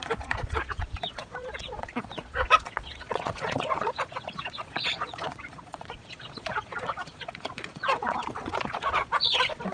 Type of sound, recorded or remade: remade